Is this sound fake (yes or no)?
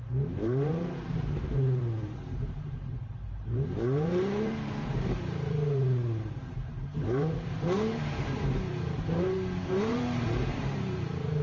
yes